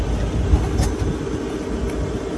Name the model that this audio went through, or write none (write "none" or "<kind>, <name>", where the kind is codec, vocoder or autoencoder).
none